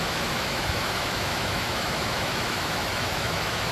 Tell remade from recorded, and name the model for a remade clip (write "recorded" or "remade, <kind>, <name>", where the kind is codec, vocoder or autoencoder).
remade, autoencoder, DAC-VAE